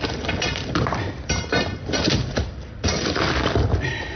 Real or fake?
fake